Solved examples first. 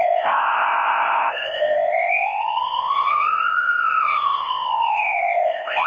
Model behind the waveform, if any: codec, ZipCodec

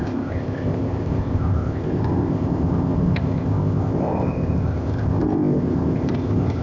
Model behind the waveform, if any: codec, ZipCodec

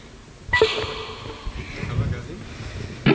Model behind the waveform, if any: none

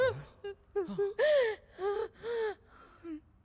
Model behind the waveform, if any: none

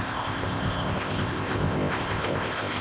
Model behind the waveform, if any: codec, ZipCodec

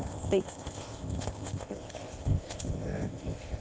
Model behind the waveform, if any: codec, ZipCodec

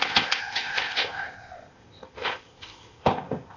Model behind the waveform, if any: codec, ZipCodec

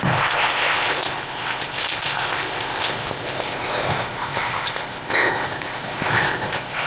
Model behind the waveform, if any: codec, ZipCodec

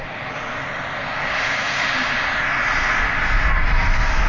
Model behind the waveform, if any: none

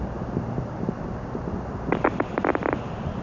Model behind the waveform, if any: none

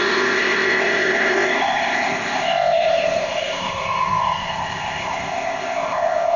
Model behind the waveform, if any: codec, ZipCodec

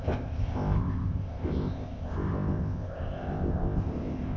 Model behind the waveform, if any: codec, ZipCodec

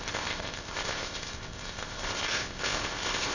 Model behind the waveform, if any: codec, ZipCodec